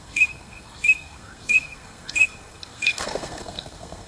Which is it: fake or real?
fake